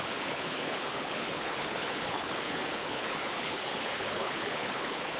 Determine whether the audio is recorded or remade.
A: remade